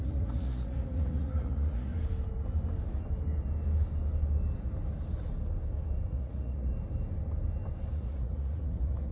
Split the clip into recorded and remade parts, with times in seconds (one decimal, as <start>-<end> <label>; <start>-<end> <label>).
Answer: 0.0-1.9 remade; 1.9-6.1 recorded; 6.1-6.7 remade; 6.7-7.9 recorded; 7.9-9.1 remade